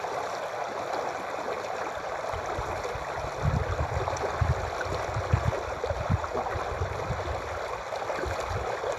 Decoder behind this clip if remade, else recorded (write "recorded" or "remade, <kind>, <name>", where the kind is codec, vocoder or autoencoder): recorded